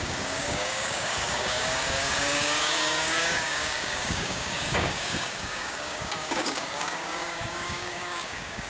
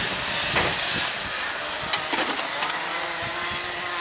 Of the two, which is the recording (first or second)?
second